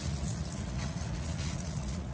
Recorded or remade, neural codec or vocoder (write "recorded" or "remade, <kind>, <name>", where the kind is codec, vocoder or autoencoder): remade, vocoder, Vocos